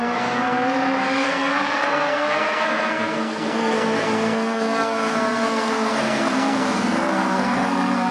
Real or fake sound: fake